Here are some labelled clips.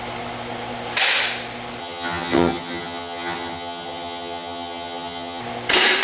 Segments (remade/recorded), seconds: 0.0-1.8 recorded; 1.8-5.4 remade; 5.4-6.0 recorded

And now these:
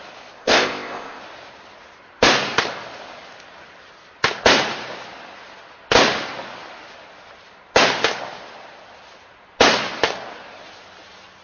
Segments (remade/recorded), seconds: 0.0-0.4 recorded; 0.4-1.2 remade; 1.2-11.4 recorded